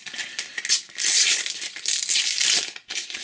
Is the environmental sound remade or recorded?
recorded